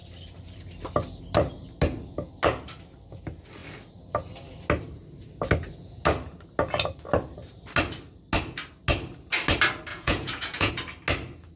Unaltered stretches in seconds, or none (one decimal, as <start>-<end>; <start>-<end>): 0.0-9.9; 10.7-11.6